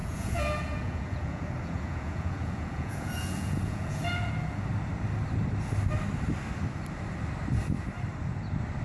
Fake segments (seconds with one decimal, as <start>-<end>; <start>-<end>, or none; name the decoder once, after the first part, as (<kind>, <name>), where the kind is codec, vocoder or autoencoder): 0.0-4.3 (vocoder, Vocos)